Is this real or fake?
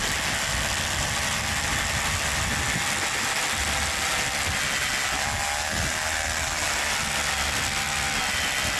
real